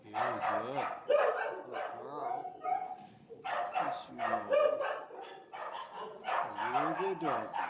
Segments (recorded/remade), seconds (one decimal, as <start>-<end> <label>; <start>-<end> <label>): 0.0-2.2 recorded; 2.2-2.9 remade; 2.9-4.3 recorded; 4.3-4.8 remade; 4.8-5.6 recorded; 5.6-6.4 remade; 6.4-7.7 recorded